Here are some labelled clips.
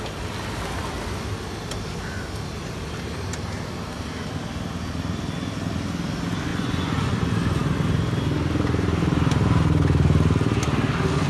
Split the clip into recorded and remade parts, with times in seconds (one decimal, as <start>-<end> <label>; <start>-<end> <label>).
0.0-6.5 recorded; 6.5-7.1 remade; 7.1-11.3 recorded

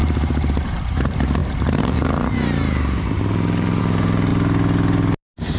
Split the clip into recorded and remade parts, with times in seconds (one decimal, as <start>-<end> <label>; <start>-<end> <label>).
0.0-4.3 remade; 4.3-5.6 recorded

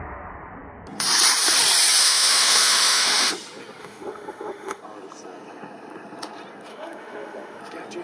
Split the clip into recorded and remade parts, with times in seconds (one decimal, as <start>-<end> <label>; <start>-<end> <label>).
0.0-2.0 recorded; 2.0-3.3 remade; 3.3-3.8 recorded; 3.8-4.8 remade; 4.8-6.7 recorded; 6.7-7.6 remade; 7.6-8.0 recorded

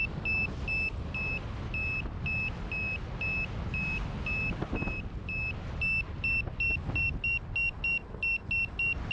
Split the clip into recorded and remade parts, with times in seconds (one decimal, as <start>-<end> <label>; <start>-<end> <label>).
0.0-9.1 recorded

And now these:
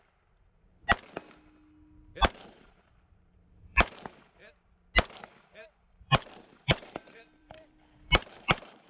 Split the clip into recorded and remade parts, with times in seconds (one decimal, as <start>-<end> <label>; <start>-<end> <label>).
0.0-0.8 remade; 0.8-2.3 recorded; 2.3-4.4 remade; 4.4-5.5 recorded; 5.5-8.9 remade